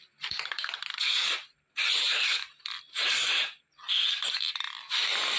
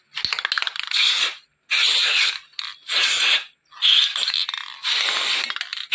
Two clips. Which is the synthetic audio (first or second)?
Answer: first